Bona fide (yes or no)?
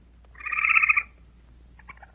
yes